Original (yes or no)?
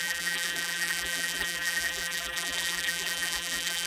no